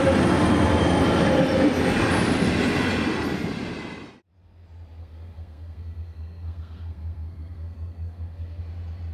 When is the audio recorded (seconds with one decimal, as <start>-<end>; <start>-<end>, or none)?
0.0-5.0; 8.6-9.1